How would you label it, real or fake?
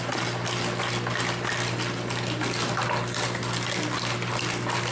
real